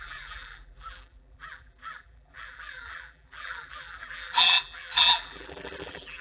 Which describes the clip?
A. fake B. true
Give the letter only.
A